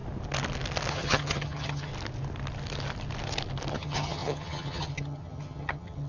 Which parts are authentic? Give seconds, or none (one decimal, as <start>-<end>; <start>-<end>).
0.0-0.9; 1.9-3.7